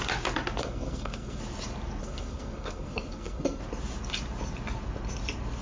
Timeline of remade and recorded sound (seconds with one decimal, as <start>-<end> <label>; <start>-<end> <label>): 0.0-0.6 recorded; 0.6-1.4 remade; 1.4-2.0 recorded; 2.0-3.6 remade; 3.6-5.6 recorded